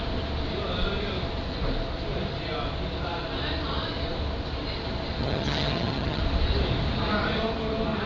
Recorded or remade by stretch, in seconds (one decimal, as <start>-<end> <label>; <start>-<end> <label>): 0.0-5.2 recorded; 5.2-6.2 remade; 6.2-8.1 recorded